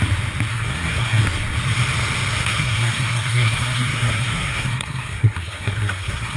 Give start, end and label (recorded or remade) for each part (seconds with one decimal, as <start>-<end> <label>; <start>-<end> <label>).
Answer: 0.0-0.5 recorded; 0.5-1.2 remade; 1.2-2.4 recorded; 2.4-6.4 remade